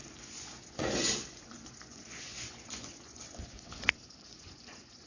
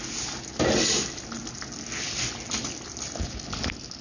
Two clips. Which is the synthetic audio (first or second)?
first